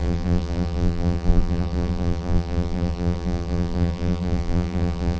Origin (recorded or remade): remade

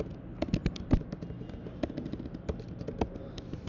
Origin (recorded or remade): recorded